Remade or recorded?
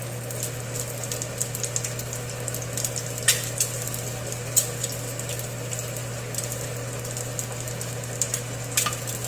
recorded